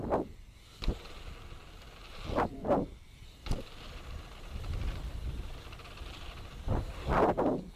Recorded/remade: recorded